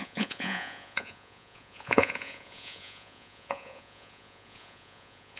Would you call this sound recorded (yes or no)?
no